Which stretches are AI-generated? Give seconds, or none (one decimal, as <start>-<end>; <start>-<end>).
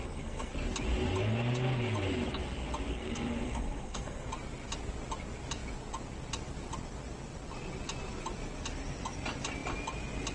0.0-0.5; 2.9-4.3